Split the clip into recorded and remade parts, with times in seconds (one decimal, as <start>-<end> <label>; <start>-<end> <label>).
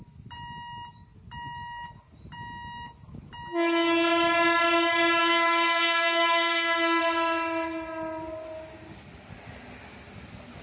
0.0-5.2 recorded; 5.2-7.0 remade; 7.0-10.6 recorded